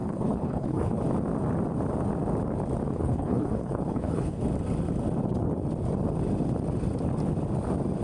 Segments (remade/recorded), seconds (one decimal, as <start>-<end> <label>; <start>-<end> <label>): 0.0-1.0 remade; 1.0-2.9 recorded; 2.9-4.4 remade; 4.4-8.0 recorded